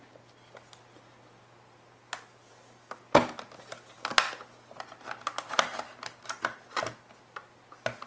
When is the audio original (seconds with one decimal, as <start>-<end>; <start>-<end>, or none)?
0.0-8.1